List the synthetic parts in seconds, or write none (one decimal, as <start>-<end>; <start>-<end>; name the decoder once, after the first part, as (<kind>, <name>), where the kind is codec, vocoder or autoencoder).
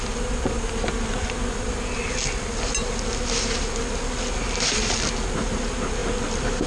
none